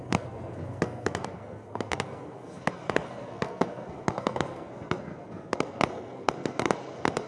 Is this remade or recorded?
remade